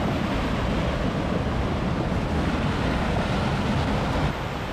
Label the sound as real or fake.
real